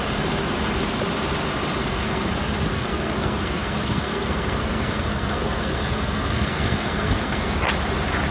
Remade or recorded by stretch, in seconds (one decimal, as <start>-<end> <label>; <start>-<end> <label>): 0.0-1.8 recorded; 1.8-2.3 remade; 2.3-2.7 recorded; 2.7-7.7 remade; 7.7-8.3 recorded